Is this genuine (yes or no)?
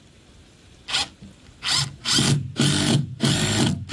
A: yes